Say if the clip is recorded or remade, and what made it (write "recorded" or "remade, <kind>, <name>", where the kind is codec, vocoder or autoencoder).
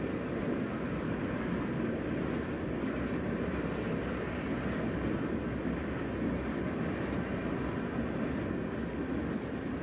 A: recorded